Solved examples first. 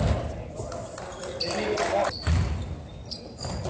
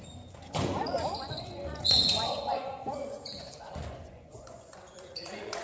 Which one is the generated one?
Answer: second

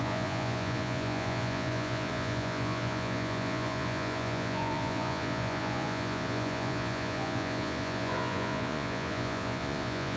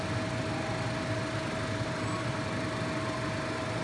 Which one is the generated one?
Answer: first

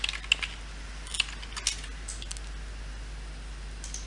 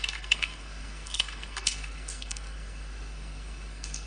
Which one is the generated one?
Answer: second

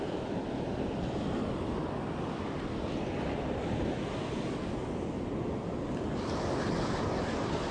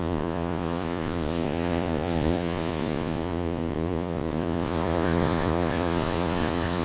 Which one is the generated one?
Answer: second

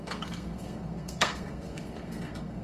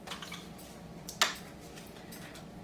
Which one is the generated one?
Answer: first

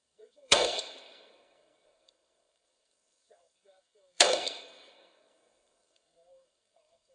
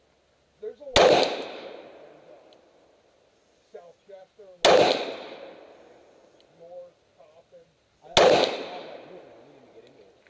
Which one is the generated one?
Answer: first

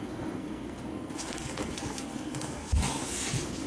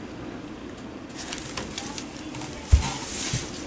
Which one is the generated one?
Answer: first